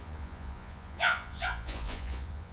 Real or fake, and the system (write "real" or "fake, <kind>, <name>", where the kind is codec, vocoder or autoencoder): fake, vocoder, Vocos